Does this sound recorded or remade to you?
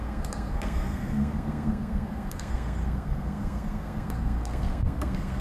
remade